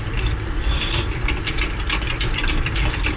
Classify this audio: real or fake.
real